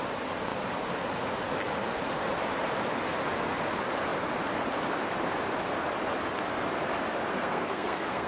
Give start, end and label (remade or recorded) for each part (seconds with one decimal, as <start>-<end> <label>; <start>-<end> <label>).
0.0-7.3 recorded; 7.3-8.3 remade